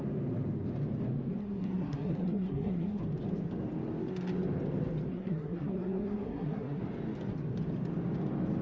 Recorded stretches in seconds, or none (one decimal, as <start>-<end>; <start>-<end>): 0.0-1.4; 3.0-5.1; 6.8-8.6